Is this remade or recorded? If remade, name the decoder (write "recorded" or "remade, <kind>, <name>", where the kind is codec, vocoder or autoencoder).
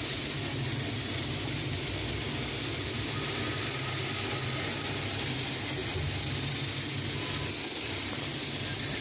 recorded